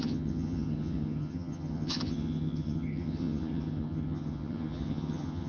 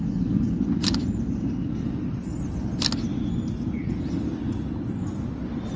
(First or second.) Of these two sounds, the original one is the second